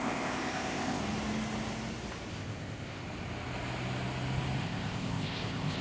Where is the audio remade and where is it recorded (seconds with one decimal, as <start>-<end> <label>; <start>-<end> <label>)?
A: 0.0-1.0 remade; 1.0-2.3 recorded; 2.3-3.0 remade; 3.0-4.6 recorded; 4.6-5.8 remade